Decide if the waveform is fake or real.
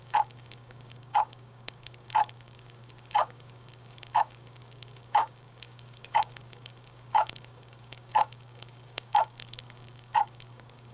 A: fake